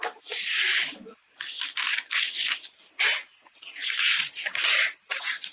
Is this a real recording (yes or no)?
yes